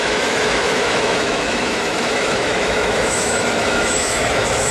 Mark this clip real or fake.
fake